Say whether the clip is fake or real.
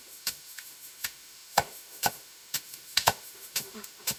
fake